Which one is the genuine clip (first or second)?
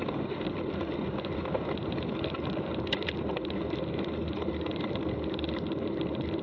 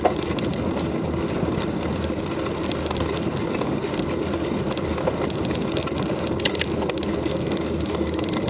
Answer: second